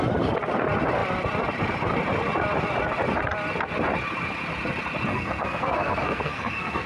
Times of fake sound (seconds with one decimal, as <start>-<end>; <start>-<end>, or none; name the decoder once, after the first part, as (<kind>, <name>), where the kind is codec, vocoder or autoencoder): 5.1-6.9 (codec, SNAC)